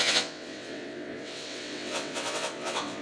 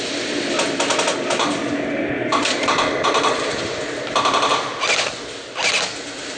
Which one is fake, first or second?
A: first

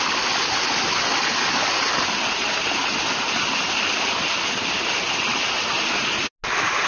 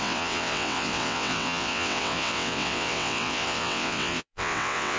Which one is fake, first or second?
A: second